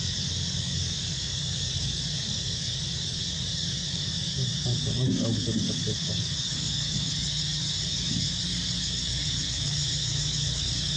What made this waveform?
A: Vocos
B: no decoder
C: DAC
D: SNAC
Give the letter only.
C